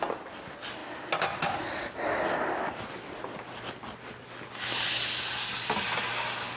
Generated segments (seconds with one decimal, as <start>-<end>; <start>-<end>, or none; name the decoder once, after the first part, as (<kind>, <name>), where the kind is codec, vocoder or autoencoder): none